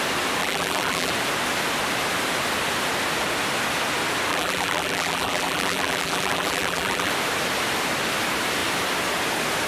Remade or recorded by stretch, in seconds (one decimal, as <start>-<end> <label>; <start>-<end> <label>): 0.0-0.4 recorded; 0.4-1.1 remade; 1.1-4.3 recorded; 4.3-7.1 remade; 7.1-9.7 recorded